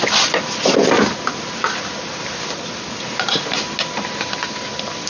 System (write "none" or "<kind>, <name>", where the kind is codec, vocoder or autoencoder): none